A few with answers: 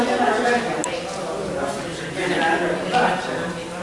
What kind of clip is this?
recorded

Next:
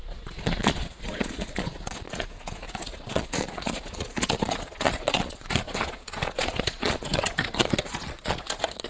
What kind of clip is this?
remade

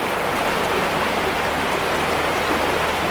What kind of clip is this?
recorded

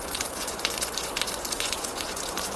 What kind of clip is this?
remade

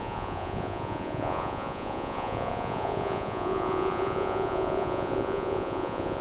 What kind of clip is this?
remade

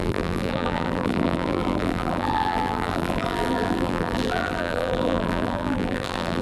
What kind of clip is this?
remade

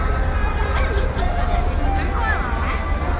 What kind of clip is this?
recorded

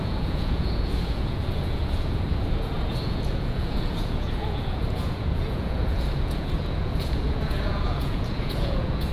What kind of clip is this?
remade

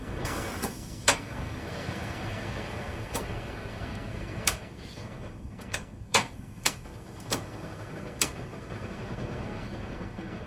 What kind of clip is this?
remade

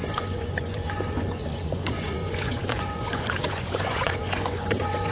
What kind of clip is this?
remade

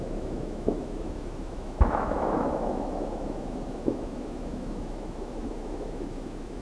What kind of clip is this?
remade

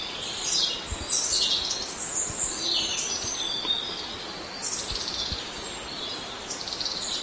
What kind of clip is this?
recorded